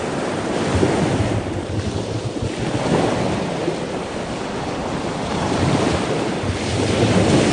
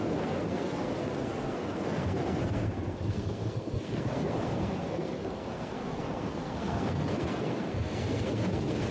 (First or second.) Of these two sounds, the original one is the first